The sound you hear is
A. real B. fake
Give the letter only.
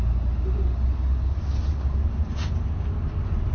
A